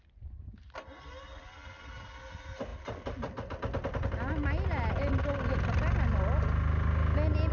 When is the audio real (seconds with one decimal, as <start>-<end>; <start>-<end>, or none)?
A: 0.0-7.5